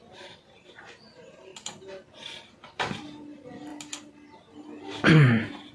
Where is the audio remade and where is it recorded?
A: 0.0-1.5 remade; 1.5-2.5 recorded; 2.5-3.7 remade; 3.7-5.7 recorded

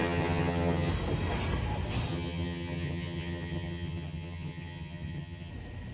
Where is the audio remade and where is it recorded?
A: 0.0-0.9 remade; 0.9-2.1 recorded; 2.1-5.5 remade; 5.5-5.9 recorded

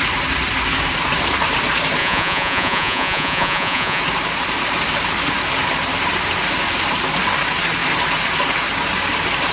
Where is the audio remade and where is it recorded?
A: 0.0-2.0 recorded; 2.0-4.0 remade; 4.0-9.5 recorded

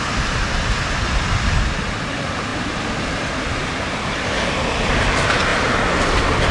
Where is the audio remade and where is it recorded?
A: 0.0-2.5 recorded; 2.5-3.1 remade; 3.1-6.5 recorded

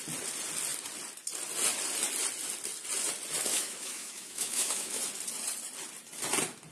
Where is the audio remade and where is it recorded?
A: 0.0-3.5 recorded; 3.5-5.0 remade; 5.0-6.7 recorded

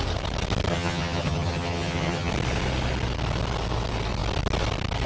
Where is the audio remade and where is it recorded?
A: 0.0-0.7 recorded; 0.7-2.3 remade; 2.3-5.1 recorded

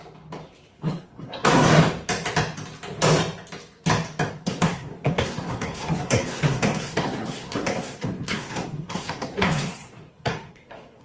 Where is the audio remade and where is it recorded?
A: 0.0-0.7 recorded; 0.7-1.8 remade; 1.8-4.3 recorded; 4.3-11.0 remade